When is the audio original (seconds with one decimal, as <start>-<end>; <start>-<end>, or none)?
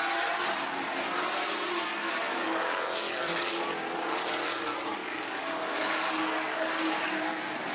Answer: 0.0-2.2; 3.7-5.0; 6.8-7.7